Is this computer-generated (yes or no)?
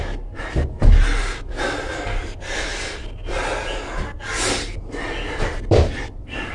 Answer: no